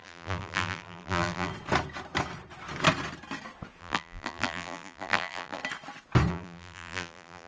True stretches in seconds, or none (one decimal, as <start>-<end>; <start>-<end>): 1.5-3.8; 5.6-6.3